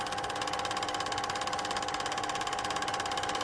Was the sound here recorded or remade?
recorded